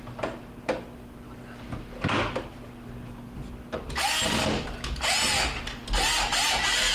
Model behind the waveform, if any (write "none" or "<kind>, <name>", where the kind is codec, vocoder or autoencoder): none